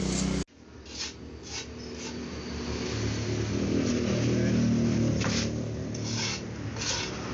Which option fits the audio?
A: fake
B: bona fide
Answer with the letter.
B